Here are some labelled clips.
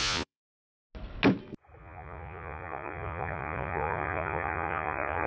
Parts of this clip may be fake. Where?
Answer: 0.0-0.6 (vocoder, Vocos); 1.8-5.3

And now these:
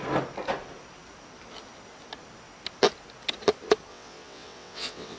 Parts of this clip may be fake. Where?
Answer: 3.9-5.2 (vocoder, WaveNeXt)

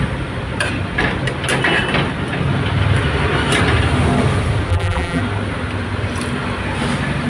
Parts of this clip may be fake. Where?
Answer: 4.7-5.2 (vocoder, BigVGAN v2)

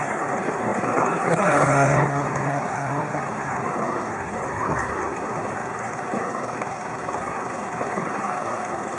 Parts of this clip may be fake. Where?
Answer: 0.0-9.0 (codec, SNAC)